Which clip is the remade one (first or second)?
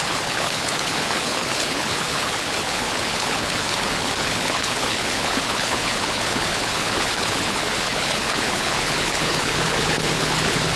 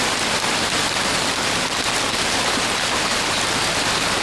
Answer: first